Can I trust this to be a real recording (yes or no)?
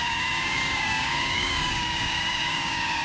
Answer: no